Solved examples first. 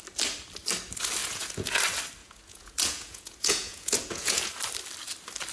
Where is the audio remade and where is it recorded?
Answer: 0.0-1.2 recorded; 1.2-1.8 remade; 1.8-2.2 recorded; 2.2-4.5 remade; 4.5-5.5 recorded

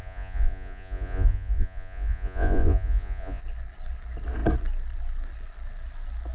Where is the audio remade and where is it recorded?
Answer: 0.0-3.4 remade; 3.4-6.3 recorded

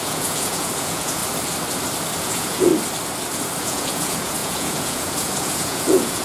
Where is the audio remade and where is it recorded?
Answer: 0.0-1.2 remade; 1.2-2.2 recorded; 2.2-2.7 remade; 2.7-3.6 recorded; 3.6-6.2 remade

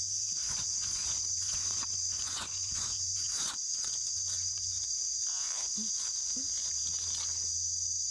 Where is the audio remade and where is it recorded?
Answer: 0.0-0.4 recorded; 0.4-5.2 remade; 5.2-8.1 recorded

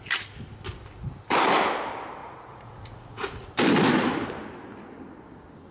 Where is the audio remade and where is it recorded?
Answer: 0.0-2.2 recorded; 2.2-3.5 remade; 3.5-5.7 recorded